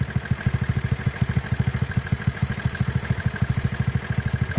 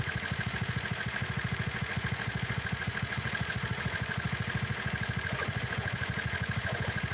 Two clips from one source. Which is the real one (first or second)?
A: first